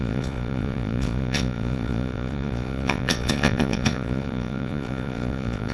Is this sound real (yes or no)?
no